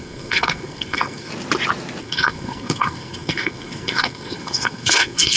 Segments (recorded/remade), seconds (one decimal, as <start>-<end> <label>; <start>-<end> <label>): 0.0-1.3 remade; 1.3-2.0 recorded; 2.0-5.4 remade